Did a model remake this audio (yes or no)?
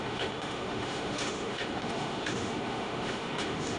yes